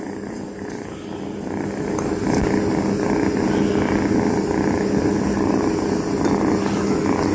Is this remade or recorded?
recorded